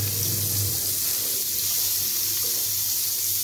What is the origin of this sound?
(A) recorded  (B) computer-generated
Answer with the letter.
A